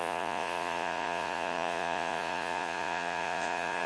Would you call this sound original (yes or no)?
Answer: no